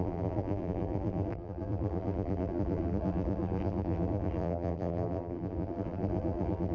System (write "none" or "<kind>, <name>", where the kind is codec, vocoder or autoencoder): vocoder, BigVGAN v2